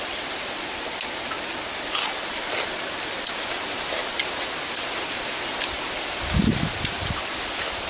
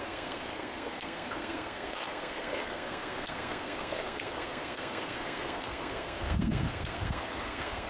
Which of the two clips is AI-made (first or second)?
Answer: second